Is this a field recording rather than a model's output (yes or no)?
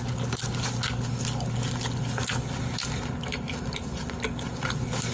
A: yes